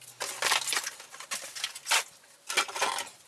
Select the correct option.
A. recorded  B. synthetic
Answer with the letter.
A